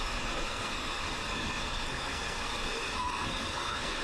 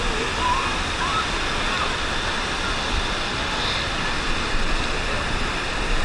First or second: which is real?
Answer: second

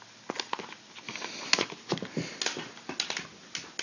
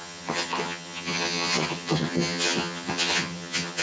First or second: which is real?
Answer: first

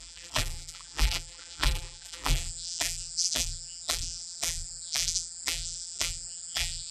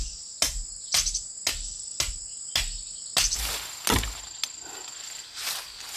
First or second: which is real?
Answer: second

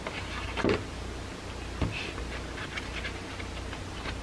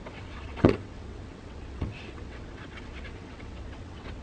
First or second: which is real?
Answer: first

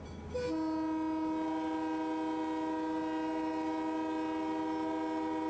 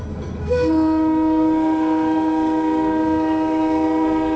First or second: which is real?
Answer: first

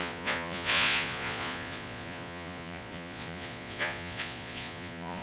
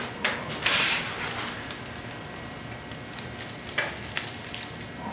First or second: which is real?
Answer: second